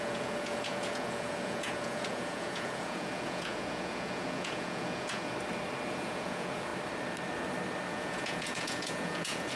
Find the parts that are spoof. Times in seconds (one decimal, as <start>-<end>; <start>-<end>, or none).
0.0-5.3; 5.9-6.7; 7.9-9.6

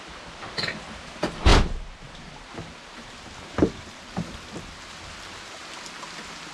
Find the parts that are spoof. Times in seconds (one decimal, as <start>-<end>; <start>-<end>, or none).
none

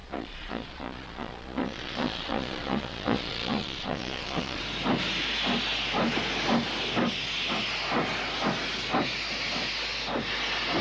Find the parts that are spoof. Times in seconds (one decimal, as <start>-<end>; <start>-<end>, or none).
0.0-4.6

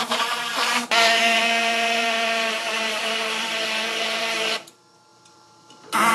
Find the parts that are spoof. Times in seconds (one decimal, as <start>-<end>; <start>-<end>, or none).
0.0-6.1